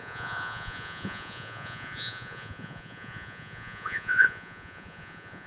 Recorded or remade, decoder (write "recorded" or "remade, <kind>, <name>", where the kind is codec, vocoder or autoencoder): remade, vocoder, Vocos